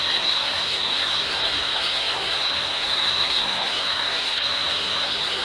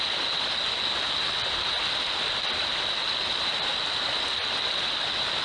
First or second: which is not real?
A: first